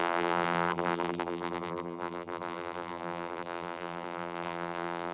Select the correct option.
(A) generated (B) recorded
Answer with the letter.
A